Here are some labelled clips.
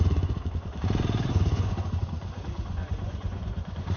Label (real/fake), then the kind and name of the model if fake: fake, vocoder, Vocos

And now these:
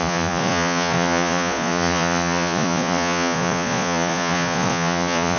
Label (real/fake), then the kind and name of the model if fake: fake, vocoder, Vocos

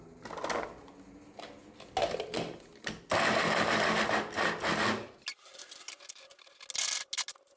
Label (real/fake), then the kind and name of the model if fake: real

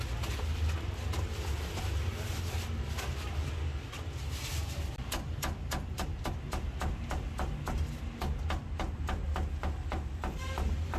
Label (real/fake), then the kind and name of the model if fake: real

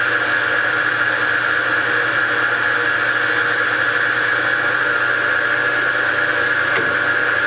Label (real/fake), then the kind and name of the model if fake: real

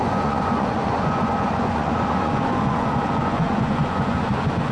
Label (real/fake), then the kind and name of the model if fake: fake, vocoder, Vocos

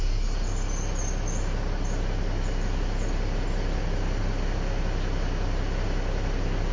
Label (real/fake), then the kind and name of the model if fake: real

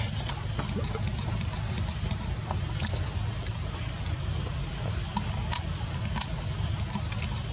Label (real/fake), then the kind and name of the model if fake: real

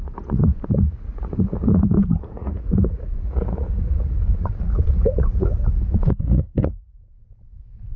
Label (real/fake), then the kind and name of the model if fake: fake, vocoder, Vocos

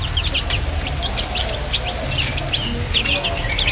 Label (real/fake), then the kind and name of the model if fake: real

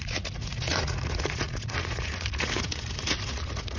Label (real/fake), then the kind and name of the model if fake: fake, vocoder, Vocos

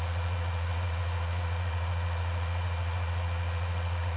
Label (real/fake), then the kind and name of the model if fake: fake, vocoder, Vocos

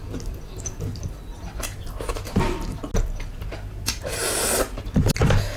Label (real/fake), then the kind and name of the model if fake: real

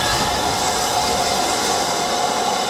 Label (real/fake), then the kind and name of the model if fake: real